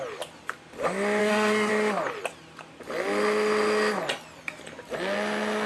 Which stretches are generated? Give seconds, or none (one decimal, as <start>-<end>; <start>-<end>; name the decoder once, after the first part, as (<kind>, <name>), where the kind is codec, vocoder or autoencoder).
1.2-1.7 (codec, SNAC)

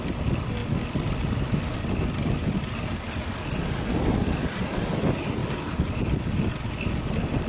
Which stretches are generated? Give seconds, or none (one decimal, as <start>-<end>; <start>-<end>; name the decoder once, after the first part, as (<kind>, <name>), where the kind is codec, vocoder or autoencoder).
none

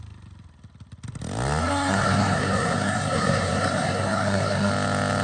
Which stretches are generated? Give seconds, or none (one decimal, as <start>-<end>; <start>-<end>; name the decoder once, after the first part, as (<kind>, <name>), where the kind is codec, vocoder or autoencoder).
1.6-4.7 (codec, SNAC)

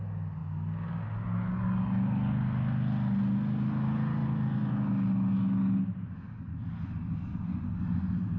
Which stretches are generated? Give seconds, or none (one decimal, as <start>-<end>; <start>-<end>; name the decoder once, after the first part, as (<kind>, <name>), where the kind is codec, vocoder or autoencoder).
none